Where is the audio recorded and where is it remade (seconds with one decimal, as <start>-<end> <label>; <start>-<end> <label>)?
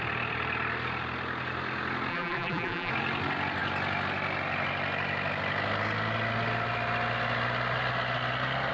0.0-2.1 recorded; 2.1-2.9 remade; 2.9-8.7 recorded